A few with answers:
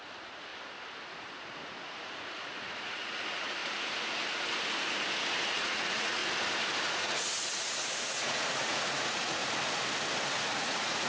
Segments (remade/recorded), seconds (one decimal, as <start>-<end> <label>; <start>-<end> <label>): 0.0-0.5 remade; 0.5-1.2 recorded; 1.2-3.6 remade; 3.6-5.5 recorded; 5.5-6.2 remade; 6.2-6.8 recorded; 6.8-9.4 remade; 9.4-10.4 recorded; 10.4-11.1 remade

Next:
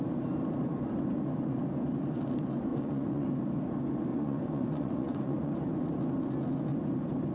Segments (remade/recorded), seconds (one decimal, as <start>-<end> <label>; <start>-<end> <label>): 0.0-2.7 recorded; 2.7-3.3 remade; 3.3-4.1 recorded; 4.1-5.5 remade; 5.5-7.3 recorded

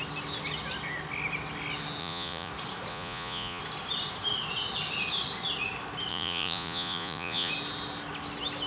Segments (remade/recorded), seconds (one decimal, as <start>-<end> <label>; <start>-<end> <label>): 0.0-2.0 recorded; 2.0-2.5 remade; 2.5-2.9 recorded; 2.9-3.6 remade; 3.6-6.1 recorded; 6.1-7.5 remade; 7.5-8.7 recorded

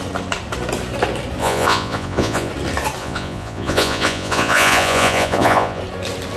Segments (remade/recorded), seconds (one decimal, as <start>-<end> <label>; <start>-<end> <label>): 0.0-1.4 recorded; 1.4-2.5 remade; 2.5-3.0 recorded; 3.0-5.8 remade; 5.8-6.4 recorded